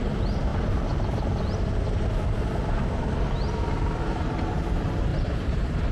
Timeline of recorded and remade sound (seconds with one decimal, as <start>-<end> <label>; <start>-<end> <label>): 0.0-5.1 recorded; 5.1-5.9 remade